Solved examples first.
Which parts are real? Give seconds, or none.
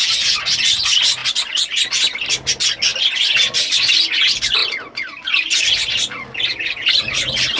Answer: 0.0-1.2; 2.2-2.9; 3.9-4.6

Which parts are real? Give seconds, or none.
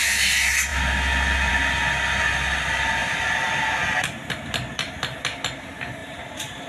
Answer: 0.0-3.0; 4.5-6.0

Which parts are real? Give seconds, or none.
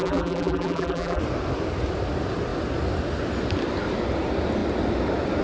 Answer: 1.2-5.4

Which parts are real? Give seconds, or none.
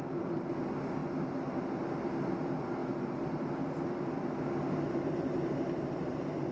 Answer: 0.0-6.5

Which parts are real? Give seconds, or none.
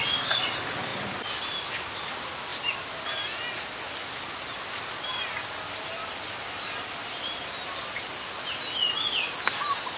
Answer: 0.0-10.0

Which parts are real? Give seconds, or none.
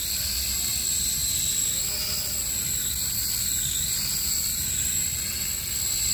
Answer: 0.0-6.1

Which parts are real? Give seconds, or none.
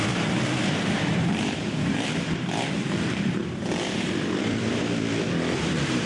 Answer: 3.4-4.4